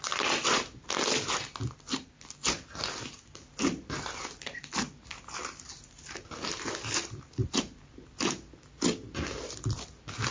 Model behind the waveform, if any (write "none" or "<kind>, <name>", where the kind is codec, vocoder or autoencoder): none